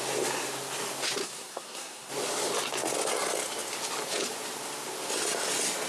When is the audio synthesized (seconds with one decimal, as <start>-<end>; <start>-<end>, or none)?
1.2-2.1